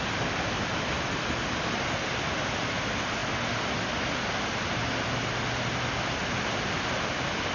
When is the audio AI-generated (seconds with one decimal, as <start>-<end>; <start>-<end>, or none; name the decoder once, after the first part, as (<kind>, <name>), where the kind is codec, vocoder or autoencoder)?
none

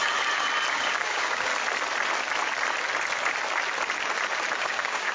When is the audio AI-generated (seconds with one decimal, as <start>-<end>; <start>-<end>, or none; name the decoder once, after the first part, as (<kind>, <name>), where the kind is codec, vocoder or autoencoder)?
0.7-1.5 (codec, DAC); 4.6-5.1

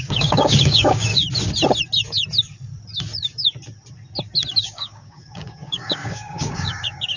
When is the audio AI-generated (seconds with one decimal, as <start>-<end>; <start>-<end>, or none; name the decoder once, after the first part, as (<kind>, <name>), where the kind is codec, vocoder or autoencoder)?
0.0-1.1 (codec, DAC); 4.6-7.2

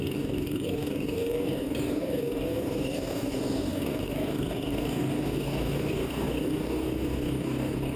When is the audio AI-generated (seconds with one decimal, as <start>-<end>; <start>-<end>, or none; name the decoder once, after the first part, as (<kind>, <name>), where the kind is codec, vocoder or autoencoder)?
0.0-8.0 (codec, DAC)

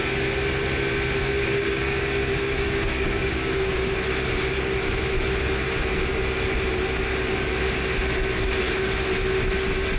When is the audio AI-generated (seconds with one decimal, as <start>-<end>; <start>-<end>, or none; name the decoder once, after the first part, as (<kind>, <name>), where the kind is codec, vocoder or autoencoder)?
1.2-3.9 (codec, DAC)

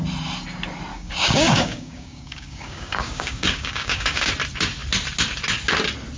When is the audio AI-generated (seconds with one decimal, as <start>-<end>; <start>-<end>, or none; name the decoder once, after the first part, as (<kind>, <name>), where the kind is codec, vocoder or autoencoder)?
0.9-4.3 (codec, DAC)

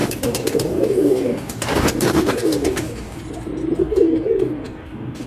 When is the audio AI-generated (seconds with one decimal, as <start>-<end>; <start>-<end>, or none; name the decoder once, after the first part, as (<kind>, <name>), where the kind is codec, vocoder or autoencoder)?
0.0-3.2 (codec, DAC); 3.8-5.3